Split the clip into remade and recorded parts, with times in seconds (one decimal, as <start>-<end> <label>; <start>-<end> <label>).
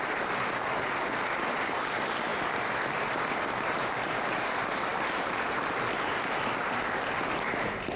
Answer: 0.0-8.0 recorded